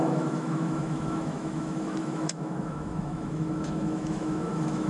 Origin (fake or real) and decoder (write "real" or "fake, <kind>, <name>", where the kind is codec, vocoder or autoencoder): fake, autoencoder, DAC-VAE